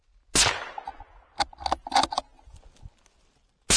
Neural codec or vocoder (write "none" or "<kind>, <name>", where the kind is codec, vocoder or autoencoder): none